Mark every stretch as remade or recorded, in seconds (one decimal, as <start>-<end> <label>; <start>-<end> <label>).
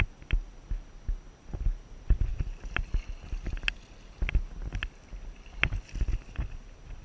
0.0-7.0 recorded